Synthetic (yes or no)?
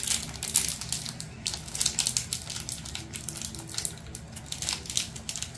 no